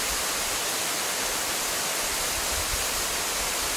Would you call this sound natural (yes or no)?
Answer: yes